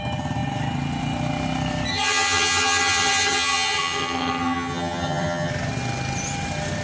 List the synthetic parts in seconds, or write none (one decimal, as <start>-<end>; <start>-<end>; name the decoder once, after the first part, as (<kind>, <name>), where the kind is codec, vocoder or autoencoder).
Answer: 1.9-5.5 (vocoder, HiFi-GAN)